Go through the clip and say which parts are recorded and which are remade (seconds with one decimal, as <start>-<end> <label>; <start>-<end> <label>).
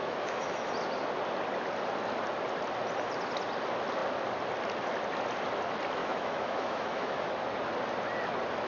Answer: 0.0-0.7 remade; 0.7-6.0 recorded; 6.0-7.3 remade; 7.3-8.7 recorded